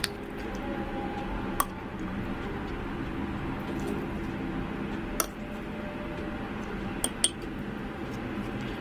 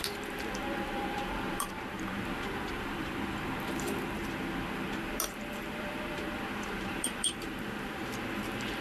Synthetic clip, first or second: second